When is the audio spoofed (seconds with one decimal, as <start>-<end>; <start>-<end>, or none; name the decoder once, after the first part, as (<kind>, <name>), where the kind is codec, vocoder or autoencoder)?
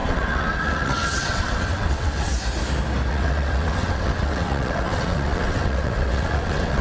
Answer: 0.0-2.3 (vocoder, WaveNeXt); 3.1-6.8